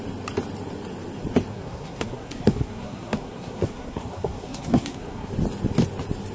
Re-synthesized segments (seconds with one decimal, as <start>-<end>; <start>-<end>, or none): 1.5-5.3